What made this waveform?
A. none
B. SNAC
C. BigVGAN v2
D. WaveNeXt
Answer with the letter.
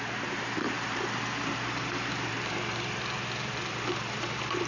C